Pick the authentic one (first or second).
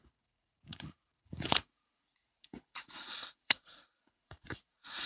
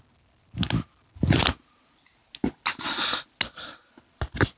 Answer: second